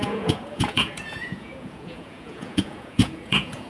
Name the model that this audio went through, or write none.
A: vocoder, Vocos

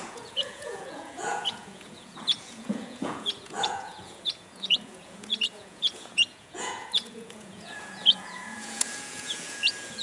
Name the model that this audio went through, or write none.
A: vocoder, Vocos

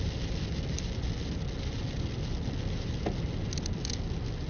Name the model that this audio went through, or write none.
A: none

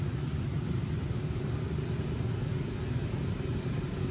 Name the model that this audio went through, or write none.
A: none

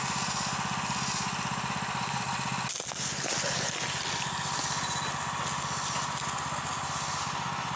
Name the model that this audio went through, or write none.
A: none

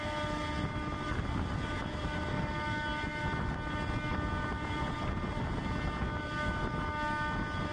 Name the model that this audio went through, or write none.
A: none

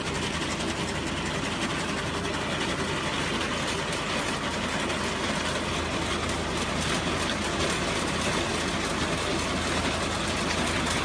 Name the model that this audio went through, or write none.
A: none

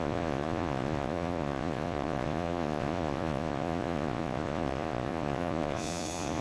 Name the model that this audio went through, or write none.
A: vocoder, Vocos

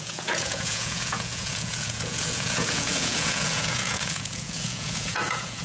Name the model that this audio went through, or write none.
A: vocoder, Vocos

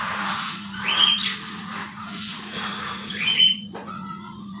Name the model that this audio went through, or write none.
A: vocoder, Vocos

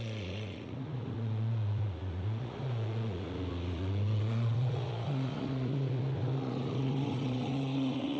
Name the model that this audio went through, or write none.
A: vocoder, Vocos